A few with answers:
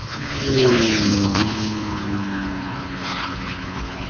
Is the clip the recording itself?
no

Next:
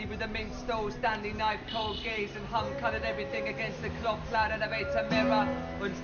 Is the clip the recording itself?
yes